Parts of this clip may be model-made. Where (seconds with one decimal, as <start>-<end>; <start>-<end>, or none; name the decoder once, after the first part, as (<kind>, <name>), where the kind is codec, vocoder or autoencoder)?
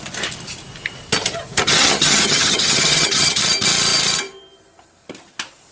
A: 1.7-3.4 (vocoder, HiFi-GAN)